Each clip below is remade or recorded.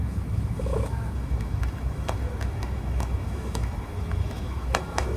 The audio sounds remade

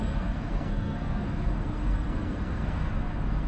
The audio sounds remade